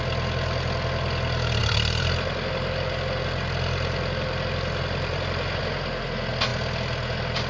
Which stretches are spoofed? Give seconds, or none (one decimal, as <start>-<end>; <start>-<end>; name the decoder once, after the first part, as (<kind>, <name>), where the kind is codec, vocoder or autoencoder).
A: 1.6-5.6 (vocoder, BigVGAN v2)